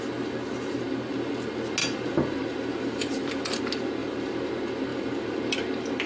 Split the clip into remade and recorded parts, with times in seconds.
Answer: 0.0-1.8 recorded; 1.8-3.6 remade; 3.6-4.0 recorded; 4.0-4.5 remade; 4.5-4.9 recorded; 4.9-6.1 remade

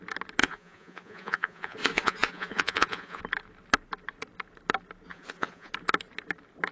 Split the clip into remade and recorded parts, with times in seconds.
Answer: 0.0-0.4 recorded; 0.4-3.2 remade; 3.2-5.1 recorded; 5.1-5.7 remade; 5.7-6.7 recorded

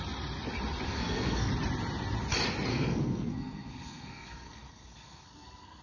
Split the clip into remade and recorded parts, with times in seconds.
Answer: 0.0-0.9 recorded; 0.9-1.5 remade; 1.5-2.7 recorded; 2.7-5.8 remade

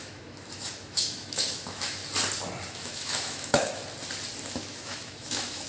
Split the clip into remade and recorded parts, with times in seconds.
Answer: 0.0-2.0 remade; 2.0-2.7 recorded; 2.7-3.8 remade; 3.8-4.5 recorded; 4.5-5.7 remade

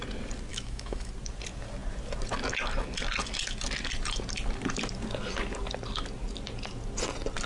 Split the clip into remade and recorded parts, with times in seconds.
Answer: 0.0-0.5 recorded; 0.5-1.1 remade; 1.1-7.5 recorded